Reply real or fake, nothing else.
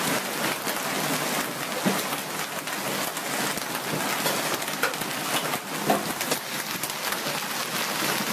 real